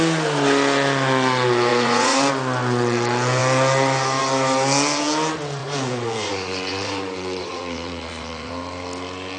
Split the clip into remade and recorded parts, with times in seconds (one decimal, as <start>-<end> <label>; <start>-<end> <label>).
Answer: 0.0-1.7 recorded; 1.7-2.3 remade; 2.3-5.6 recorded; 5.6-8.5 remade; 8.5-9.4 recorded